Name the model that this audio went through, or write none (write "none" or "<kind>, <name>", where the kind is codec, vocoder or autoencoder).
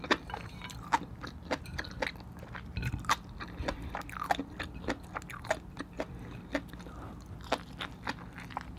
none